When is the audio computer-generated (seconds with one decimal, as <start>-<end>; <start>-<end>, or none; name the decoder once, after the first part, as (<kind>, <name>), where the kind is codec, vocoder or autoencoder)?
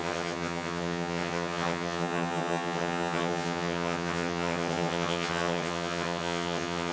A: 0.0-6.9 (vocoder, HiFi-GAN)